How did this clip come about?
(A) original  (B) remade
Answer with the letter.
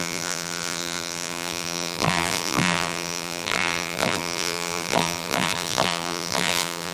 B